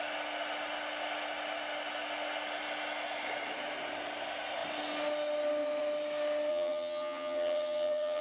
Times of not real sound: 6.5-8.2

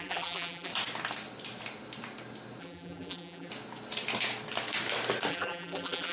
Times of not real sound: 0.0-0.7; 2.6-3.5; 5.3-6.1

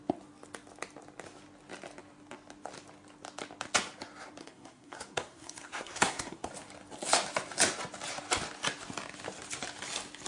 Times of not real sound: 4.4-6.5

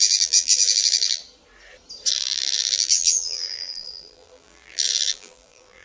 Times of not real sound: 0.0-1.2; 2.1-5.8

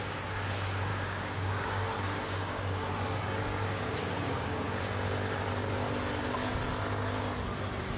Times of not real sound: 0.9-4.8

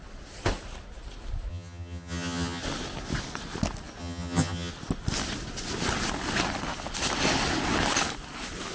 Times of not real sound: 1.5-2.6; 4.0-4.7